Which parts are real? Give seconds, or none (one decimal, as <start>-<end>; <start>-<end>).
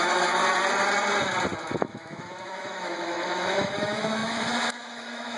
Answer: 0.4-1.6